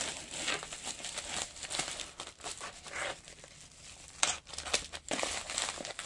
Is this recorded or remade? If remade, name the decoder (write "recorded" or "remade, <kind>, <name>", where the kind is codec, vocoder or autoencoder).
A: remade, vocoder, BigVGAN v2